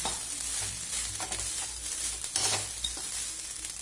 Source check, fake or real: real